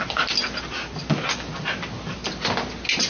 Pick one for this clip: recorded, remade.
recorded